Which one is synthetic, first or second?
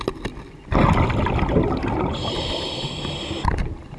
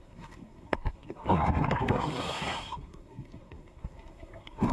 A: second